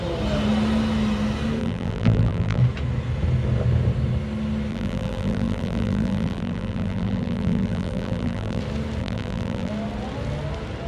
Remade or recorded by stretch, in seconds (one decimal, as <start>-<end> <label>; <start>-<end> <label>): 0.0-1.6 recorded; 1.6-2.6 remade; 2.6-4.7 recorded; 4.7-8.6 remade; 8.6-9.0 recorded; 9.0-9.7 remade; 9.7-10.9 recorded